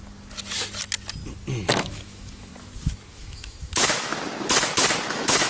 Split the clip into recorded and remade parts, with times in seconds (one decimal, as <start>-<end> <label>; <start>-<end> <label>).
0.0-1.7 recorded; 1.7-2.5 remade; 2.5-3.1 recorded; 3.1-4.1 remade; 4.1-5.1 recorded; 5.1-5.5 remade